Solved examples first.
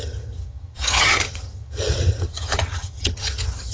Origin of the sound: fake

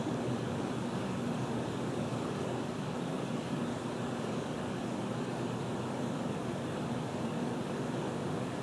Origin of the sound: fake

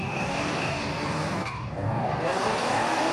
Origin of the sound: fake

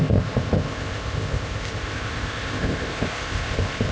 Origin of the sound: fake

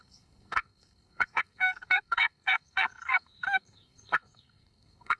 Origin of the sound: fake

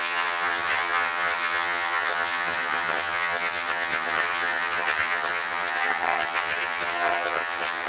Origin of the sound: fake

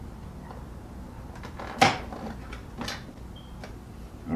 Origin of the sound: real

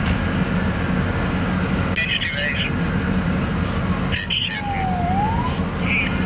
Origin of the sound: real